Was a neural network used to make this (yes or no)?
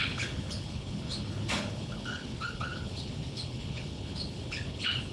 yes